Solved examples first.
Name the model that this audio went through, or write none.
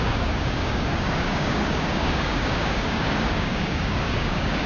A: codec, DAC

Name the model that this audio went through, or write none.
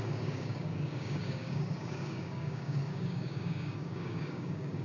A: codec, DAC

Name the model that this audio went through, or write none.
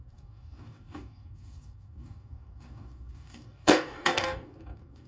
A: codec, DAC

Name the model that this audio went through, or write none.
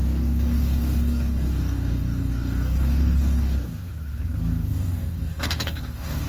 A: codec, DAC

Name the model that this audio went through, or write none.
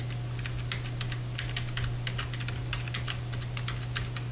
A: none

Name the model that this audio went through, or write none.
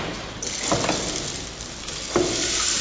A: none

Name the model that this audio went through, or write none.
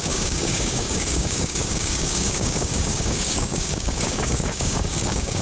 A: codec, DAC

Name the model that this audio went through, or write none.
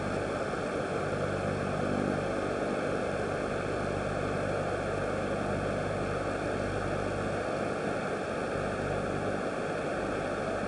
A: none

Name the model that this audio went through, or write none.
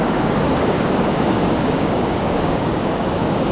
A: codec, DAC